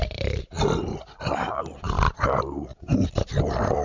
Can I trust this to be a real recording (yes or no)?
yes